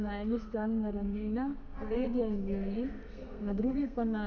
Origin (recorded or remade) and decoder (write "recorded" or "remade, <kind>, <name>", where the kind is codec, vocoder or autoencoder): remade, codec, SNAC